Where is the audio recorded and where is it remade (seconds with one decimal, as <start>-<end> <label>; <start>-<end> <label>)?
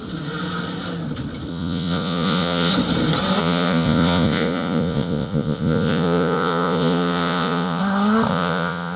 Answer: 0.0-1.5 recorded; 1.5-2.7 remade; 2.7-3.4 recorded; 3.4-7.8 remade; 7.8-8.3 recorded; 8.3-9.0 remade